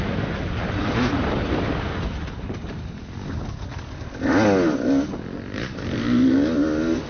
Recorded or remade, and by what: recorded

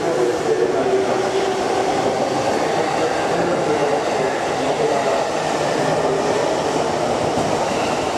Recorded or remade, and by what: recorded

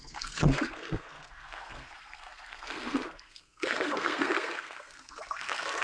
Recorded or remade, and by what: remade, codec, SNAC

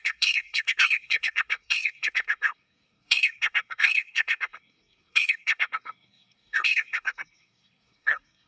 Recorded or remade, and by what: remade, codec, SNAC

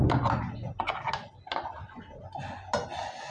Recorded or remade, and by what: recorded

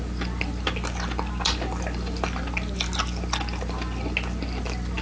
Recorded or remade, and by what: recorded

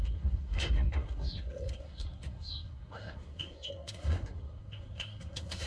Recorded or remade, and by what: remade, codec, SNAC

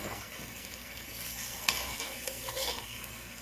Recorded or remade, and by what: remade, codec, SNAC